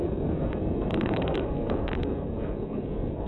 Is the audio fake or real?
fake